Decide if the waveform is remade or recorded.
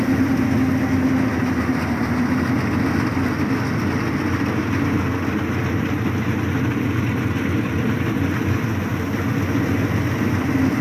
recorded